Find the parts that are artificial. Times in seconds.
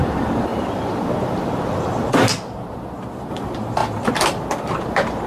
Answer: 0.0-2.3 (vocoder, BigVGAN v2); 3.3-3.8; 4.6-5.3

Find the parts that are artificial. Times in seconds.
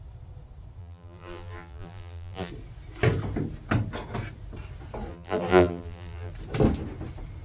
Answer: 0.8-2.5 (vocoder, BigVGAN v2); 5.1-6.3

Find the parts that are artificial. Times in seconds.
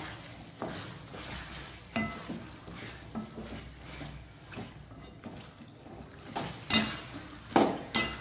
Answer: none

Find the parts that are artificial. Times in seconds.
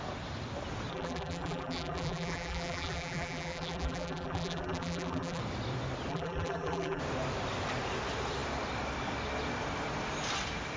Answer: 0.9-5.4 (vocoder, BigVGAN v2); 6.1-7.0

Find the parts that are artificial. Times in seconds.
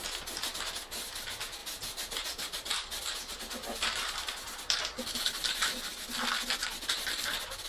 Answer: none